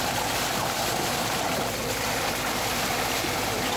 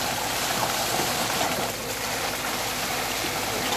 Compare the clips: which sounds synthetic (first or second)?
first